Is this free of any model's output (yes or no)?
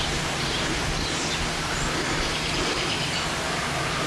no